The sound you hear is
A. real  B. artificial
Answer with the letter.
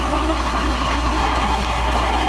B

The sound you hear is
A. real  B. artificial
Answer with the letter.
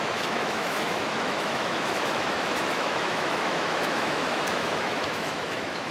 B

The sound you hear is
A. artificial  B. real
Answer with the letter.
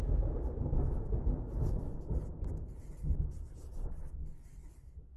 B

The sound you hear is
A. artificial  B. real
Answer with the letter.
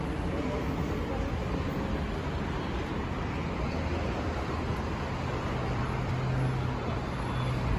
B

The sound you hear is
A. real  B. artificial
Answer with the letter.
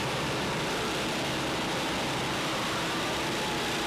A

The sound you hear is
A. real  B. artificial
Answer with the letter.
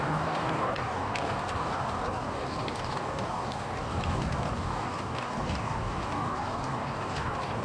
B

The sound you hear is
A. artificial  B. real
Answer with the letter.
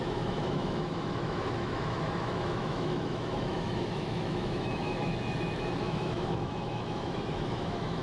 A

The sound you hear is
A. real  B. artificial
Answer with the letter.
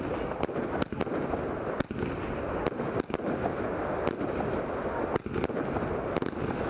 A